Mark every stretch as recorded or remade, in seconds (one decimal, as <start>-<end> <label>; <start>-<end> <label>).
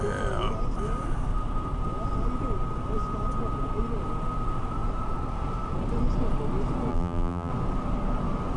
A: 0.0-6.9 recorded; 6.9-7.5 remade; 7.5-8.6 recorded